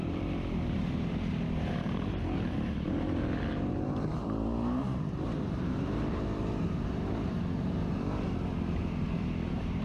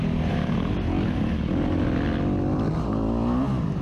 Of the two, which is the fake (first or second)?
first